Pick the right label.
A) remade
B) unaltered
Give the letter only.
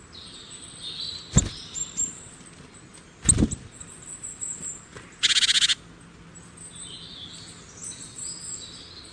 B